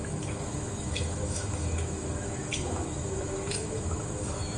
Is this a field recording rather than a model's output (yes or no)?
no